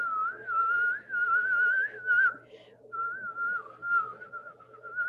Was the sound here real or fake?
real